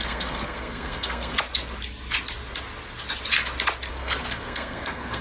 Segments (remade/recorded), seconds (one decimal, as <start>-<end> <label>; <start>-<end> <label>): 0.0-1.3 remade; 1.3-3.9 recorded; 3.9-5.2 remade